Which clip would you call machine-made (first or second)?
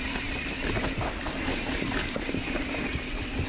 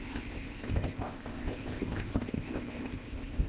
second